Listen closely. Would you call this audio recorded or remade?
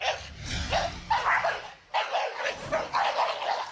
recorded